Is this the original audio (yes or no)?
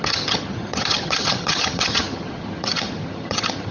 no